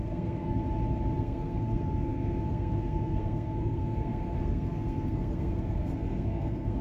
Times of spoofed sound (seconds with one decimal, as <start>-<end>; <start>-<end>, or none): 0.0-0.6; 1.2-6.8